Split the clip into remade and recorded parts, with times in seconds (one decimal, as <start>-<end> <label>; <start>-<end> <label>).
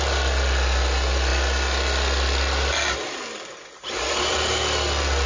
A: 0.0-5.3 recorded